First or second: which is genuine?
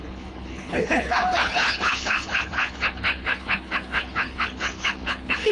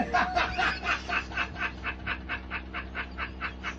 second